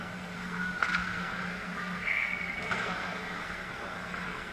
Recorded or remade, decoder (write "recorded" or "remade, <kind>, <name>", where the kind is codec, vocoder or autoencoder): remade, codec, SNAC